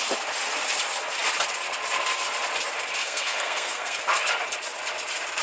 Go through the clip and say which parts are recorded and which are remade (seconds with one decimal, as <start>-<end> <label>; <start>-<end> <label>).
0.0-3.0 recorded; 3.0-4.0 remade; 4.0-5.4 recorded